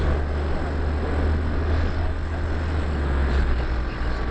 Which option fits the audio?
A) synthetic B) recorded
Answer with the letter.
B